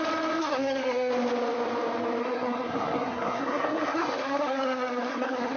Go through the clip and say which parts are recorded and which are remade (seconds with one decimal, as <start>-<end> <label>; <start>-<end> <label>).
0.0-0.4 recorded; 0.4-1.1 remade; 1.1-2.2 recorded; 2.2-5.6 remade

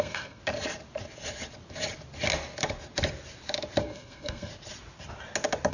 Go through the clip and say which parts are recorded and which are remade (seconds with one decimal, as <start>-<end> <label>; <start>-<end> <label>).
0.0-0.4 remade; 0.4-3.8 recorded; 3.8-4.5 remade; 4.5-5.7 recorded

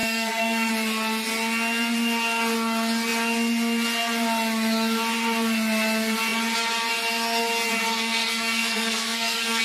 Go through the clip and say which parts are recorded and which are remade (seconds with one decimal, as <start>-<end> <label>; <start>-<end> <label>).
0.0-0.7 remade; 0.7-7.9 recorded; 7.9-9.6 remade

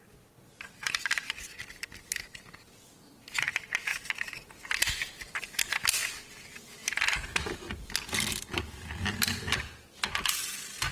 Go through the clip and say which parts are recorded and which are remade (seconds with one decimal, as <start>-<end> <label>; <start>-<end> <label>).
0.0-10.9 recorded

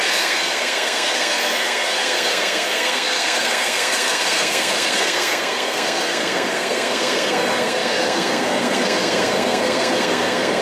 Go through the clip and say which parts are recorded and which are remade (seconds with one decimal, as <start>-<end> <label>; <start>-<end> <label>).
0.0-10.6 remade

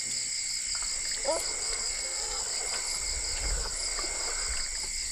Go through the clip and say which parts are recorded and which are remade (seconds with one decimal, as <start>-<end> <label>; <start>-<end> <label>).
0.0-1.6 recorded; 1.6-2.4 remade; 2.4-5.1 recorded